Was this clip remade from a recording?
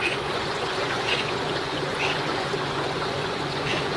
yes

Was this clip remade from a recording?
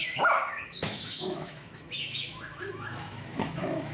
yes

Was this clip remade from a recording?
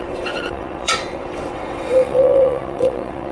yes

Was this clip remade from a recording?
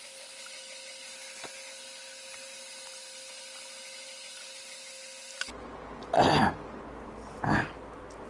no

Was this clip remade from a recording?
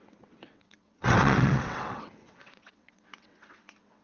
yes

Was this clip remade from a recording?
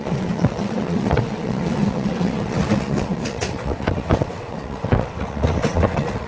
yes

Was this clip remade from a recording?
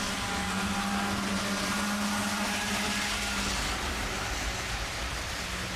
no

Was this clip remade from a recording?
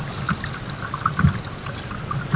no